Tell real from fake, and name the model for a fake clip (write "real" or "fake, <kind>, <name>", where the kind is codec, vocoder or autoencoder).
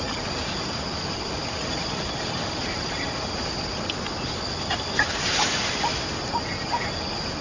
real